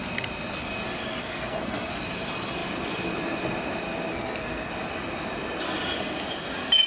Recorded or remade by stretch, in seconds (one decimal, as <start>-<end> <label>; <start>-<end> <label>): 0.0-1.2 recorded; 1.2-1.9 remade; 1.9-4.1 recorded; 4.1-4.7 remade; 4.7-6.9 recorded